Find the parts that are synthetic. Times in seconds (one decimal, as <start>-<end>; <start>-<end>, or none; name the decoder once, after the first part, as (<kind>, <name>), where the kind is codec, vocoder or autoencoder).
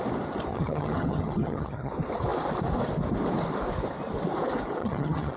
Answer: 0.5-1.9 (vocoder, HiFi-GAN); 4.8-5.4